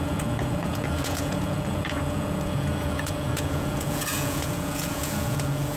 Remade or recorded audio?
remade